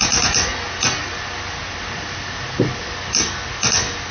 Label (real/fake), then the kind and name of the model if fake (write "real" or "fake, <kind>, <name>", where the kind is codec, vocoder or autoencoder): real